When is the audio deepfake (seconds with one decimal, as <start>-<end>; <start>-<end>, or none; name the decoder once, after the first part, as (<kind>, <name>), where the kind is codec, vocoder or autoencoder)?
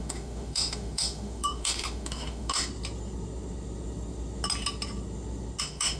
0.0-2.7 (autoencoder, DAC-VAE); 5.6-6.0